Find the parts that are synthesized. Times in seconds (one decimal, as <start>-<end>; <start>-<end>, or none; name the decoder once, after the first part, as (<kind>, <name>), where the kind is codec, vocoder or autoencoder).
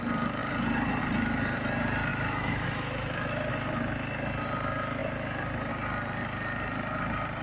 2.1-3.5 (autoencoder, DAC-VAE)